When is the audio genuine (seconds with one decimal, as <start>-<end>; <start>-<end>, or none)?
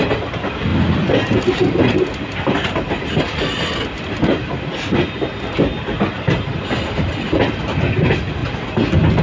0.0-9.2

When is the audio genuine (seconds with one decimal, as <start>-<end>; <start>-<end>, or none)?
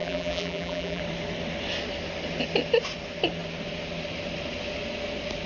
1.0-5.5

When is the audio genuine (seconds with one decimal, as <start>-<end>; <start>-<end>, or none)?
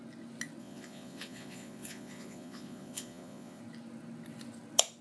0.0-0.6; 3.6-5.0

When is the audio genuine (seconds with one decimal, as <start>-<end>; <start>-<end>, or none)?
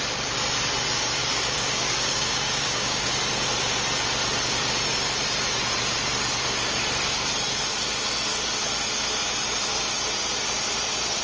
0.0-1.2; 3.1-11.2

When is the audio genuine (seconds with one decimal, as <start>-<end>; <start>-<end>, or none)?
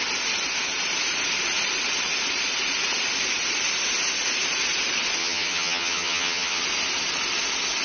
0.0-5.2; 6.6-7.8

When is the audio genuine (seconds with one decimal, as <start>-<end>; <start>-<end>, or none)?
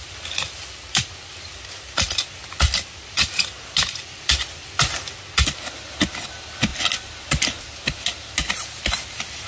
0.0-9.5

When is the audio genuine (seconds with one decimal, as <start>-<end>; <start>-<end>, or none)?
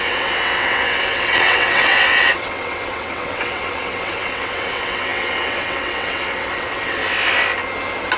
7.0-8.2